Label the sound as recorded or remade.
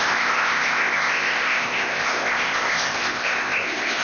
remade